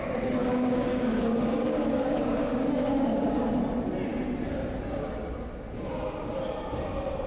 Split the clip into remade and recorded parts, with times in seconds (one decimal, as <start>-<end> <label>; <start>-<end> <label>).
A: 0.0-0.4 recorded; 0.4-3.4 remade; 3.4-7.3 recorded